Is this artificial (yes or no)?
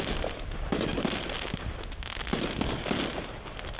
no